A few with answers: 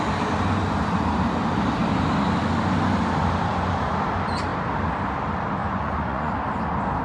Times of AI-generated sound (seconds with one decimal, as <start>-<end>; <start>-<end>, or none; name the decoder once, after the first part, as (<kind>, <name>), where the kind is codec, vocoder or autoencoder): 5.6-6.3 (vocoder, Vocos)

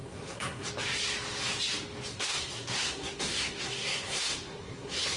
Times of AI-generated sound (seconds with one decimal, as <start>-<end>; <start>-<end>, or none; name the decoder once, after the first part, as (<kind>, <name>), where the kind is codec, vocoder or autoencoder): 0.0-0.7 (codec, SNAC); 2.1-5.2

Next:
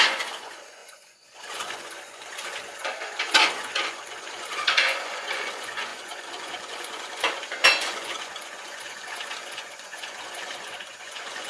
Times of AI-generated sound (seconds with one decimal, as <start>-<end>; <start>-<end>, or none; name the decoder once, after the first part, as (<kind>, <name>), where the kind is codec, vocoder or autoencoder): 0.0-11.5 (vocoder, Vocos)

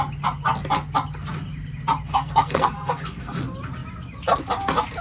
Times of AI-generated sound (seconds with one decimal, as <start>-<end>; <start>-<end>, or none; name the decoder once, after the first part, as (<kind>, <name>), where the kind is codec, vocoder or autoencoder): 2.1-3.4 (codec, SNAC)